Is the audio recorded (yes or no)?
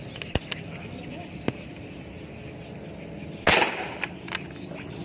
yes